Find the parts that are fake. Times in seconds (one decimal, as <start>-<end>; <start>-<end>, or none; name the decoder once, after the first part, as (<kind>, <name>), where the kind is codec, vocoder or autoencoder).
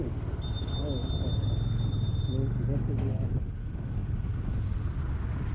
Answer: none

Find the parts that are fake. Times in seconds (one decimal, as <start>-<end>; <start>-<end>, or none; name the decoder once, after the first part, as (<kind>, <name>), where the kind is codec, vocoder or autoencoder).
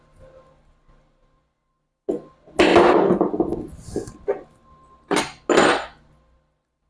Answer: none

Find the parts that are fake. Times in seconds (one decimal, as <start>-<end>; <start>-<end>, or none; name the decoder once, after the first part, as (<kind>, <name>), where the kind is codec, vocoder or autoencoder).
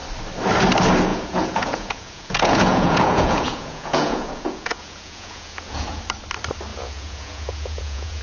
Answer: 1.1-6.0 (vocoder, Vocos); 6.7-8.2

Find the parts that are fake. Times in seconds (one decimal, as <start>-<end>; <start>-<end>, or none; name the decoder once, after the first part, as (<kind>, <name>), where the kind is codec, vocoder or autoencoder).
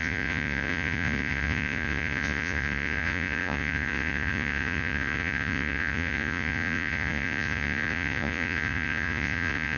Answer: 0.0-9.8 (vocoder, Vocos)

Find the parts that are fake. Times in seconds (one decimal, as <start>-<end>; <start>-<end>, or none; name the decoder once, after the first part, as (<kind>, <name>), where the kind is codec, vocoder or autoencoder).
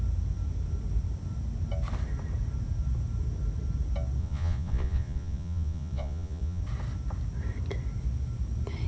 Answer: 4.2-6.6 (vocoder, Vocos)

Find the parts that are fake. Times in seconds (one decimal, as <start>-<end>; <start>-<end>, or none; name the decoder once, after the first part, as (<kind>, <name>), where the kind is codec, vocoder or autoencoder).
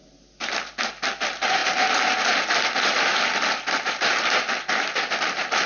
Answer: none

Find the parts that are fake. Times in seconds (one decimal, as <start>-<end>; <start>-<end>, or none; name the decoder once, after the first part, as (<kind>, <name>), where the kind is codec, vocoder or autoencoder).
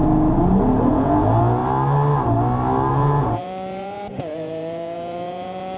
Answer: 0.9-1.6 (vocoder, Vocos); 2.9-5.8